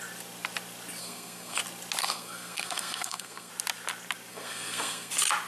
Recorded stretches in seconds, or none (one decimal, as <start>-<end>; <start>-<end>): 0.0-1.0; 1.6-2.0; 3.5-4.3; 5.1-5.5